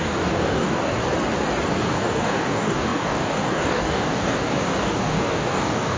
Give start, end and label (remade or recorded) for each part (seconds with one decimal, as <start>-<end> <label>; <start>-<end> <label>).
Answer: 0.0-1.0 remade; 1.0-1.7 recorded; 1.7-6.0 remade